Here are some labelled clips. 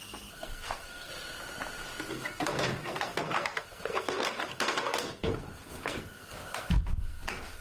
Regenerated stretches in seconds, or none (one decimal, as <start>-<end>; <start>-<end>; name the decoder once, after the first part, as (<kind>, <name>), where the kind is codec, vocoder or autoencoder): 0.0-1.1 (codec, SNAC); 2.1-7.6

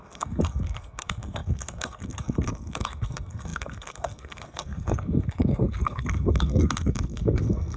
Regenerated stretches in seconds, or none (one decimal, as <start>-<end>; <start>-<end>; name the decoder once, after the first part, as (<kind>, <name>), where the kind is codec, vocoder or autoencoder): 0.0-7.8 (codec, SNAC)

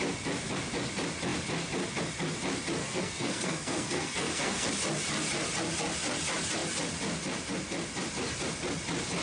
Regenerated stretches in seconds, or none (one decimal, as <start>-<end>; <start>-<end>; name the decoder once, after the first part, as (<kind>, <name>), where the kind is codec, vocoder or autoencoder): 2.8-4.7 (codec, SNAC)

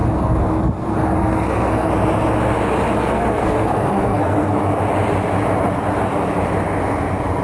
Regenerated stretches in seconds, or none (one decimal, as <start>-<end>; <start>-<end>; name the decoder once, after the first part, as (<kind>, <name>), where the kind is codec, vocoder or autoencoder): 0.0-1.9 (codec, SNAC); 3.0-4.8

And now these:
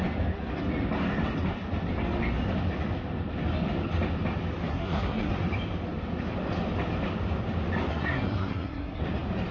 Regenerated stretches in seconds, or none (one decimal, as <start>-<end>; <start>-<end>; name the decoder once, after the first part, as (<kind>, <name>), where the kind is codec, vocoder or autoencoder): 4.7-5.3 (codec, SNAC); 7.9-9.0